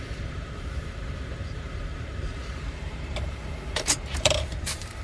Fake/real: fake